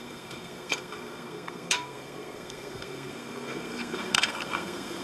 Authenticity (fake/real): fake